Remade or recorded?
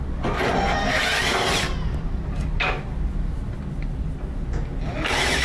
recorded